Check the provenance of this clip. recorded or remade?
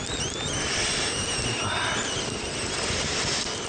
recorded